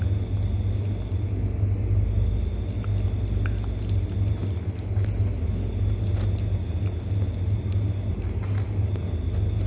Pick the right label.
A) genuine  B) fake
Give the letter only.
A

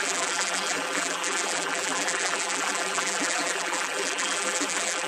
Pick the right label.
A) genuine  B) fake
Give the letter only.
B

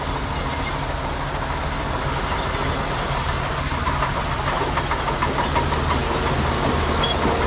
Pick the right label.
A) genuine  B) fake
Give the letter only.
A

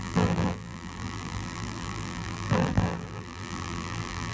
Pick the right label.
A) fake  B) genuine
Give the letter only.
A